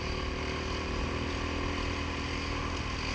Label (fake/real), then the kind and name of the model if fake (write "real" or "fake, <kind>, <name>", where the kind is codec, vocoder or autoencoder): real